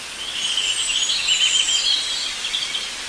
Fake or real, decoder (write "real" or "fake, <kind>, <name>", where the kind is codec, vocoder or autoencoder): real